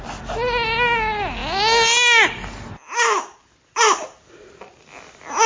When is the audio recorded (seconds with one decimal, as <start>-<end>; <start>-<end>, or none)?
0.0-5.5